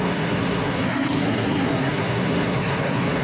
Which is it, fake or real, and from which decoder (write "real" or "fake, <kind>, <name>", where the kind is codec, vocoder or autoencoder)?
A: fake, codec, SNAC